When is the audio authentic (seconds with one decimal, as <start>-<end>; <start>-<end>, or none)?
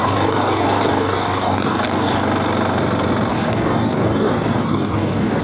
2.2-3.3